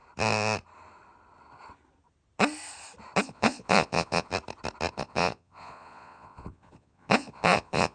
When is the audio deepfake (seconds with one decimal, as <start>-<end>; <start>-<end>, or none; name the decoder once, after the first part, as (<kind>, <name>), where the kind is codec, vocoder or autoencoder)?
3.2-4.3 (vocoder, Vocos); 4.9-7.9